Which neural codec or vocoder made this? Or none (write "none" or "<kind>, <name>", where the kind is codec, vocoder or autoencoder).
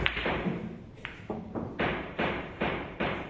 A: vocoder, BigVGAN v2